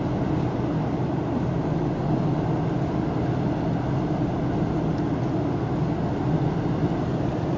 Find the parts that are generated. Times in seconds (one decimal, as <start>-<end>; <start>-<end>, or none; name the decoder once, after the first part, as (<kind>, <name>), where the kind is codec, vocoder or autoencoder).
none

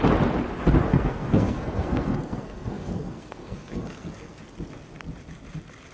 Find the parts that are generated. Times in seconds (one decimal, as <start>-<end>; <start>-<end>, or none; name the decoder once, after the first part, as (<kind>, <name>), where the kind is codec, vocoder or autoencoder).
0.9-4.4 (codec, SNAC)

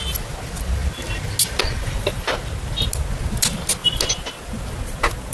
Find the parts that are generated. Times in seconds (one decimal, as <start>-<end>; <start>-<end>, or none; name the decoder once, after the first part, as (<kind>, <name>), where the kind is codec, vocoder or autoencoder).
none

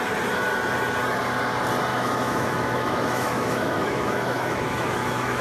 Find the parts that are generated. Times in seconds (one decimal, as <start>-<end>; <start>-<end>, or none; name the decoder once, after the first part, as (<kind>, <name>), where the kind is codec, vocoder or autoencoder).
1.9-5.4 (autoencoder, DAC-VAE)